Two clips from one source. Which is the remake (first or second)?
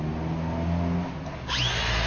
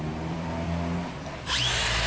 second